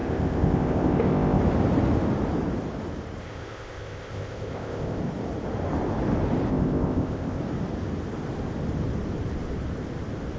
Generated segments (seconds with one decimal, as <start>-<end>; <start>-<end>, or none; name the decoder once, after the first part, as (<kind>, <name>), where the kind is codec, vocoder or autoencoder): 0.0-1.4 (codec, ZipCodec); 3.2-5.0; 6.5-7.4